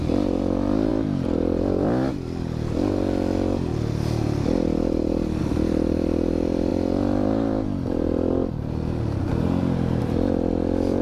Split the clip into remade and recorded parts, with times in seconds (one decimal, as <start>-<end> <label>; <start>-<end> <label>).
0.0-0.9 remade; 0.9-5.4 recorded; 5.4-6.7 remade; 6.7-10.0 recorded; 10.0-11.0 remade